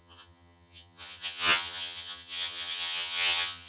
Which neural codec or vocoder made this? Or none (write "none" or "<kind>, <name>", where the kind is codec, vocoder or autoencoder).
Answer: vocoder, HiFi-GAN